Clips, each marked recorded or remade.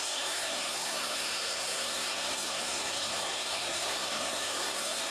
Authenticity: remade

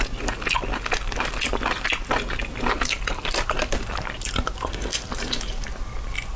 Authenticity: recorded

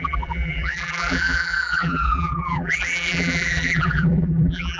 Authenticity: remade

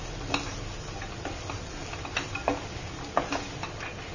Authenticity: recorded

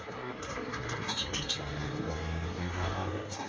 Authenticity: remade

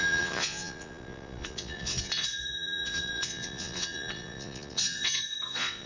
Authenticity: remade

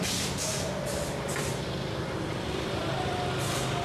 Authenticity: remade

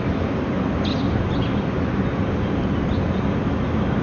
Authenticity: recorded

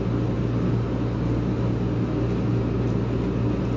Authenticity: recorded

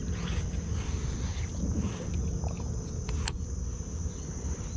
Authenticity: recorded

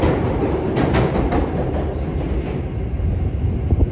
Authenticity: recorded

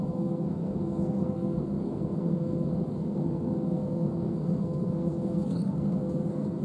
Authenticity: remade